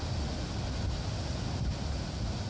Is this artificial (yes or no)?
no